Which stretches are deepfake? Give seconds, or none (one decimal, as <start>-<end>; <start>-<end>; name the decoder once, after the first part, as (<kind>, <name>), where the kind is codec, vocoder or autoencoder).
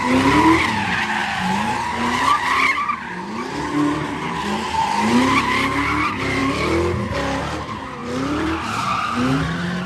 8.0-8.8 (vocoder, BigVGAN v2)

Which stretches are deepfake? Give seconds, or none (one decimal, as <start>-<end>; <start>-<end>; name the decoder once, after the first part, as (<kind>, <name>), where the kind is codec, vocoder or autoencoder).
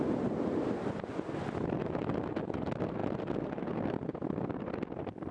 none